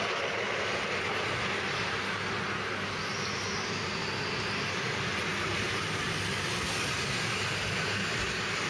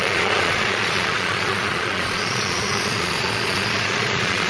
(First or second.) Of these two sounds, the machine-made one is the second